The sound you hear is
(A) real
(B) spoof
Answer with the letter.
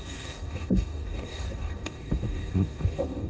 B